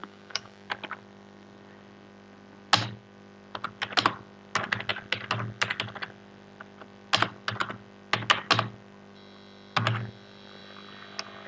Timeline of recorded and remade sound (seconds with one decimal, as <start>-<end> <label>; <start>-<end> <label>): 0.0-0.7 remade; 0.7-11.5 recorded